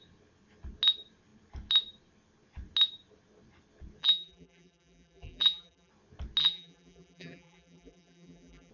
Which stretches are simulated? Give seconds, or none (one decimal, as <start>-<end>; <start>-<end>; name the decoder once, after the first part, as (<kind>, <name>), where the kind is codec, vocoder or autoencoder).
4.0-5.9 (vocoder, BigVGAN v2); 6.4-8.7